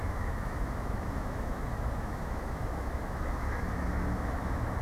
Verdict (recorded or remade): remade